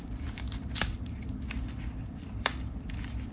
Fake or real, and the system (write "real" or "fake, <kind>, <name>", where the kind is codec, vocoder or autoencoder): fake, vocoder, BigVGAN v2